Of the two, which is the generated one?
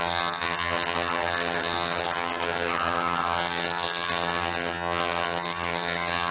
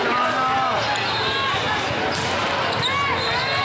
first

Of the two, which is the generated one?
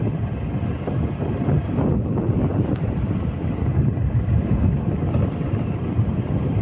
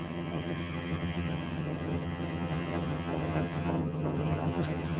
second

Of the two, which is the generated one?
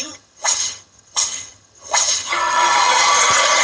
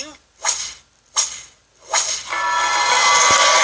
first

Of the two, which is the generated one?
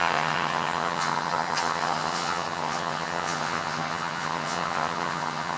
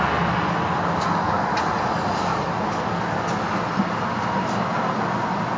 first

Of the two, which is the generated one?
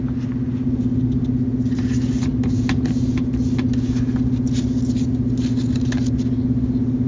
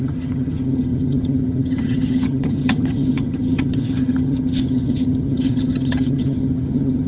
second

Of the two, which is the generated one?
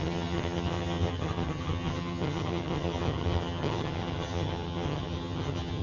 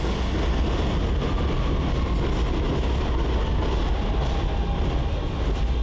first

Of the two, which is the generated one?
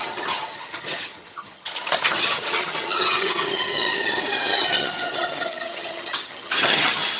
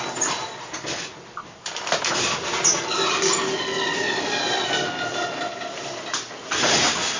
first